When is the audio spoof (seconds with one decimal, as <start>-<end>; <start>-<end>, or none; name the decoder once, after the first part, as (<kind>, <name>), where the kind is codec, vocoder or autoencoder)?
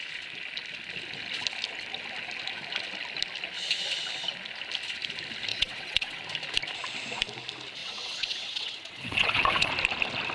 5.5-6.2 (vocoder, WaveNeXt); 7.8-9.7